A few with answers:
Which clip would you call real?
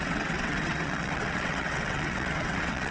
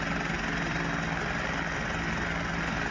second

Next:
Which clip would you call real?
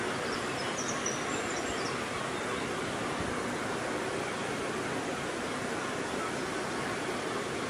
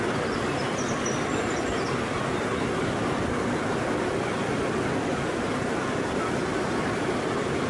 first